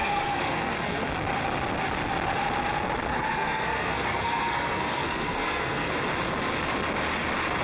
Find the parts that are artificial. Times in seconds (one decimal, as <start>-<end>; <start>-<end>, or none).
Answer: 0.0-1.1; 3.1-5.9